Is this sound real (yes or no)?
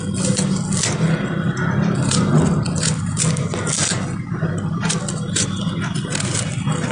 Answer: yes